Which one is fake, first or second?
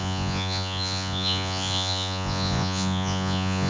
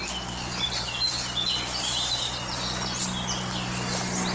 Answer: first